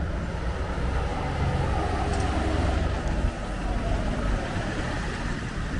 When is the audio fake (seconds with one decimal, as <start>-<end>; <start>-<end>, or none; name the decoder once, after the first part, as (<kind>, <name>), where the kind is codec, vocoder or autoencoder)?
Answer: 0.0-1.1 (vocoder, BigVGAN v2); 3.8-5.8